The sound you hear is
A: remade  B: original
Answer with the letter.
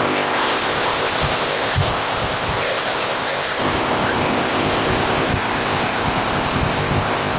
A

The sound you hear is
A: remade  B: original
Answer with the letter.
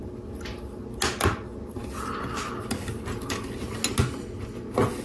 B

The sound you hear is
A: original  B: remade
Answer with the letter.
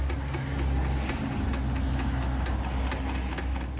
A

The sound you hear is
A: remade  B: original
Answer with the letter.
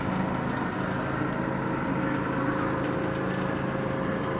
B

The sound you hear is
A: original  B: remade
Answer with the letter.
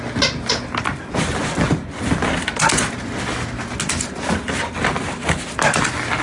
A